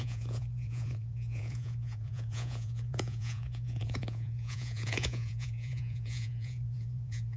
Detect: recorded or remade remade